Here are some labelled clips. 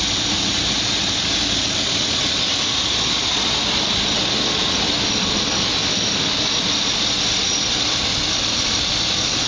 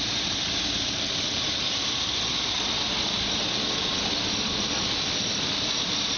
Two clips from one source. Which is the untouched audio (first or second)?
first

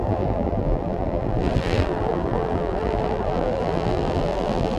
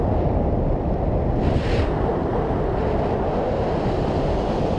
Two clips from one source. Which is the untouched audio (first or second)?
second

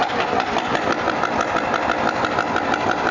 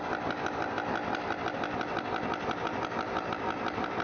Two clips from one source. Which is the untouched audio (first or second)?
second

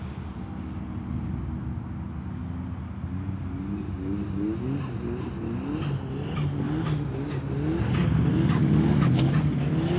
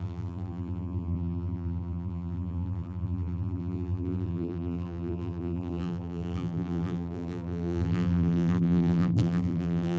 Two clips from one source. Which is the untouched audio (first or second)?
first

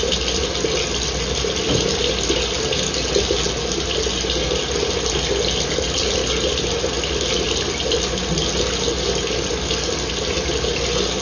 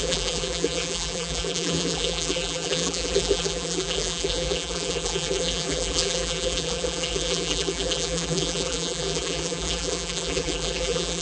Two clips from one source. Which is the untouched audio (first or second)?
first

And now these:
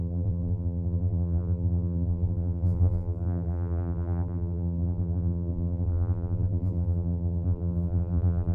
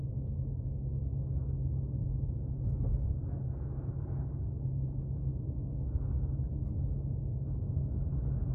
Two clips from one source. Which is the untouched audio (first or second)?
second